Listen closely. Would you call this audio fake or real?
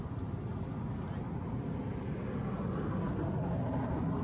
real